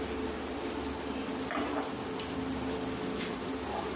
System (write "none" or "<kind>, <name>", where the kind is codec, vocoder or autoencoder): none